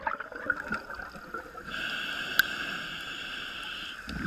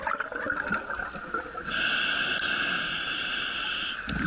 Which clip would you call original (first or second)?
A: second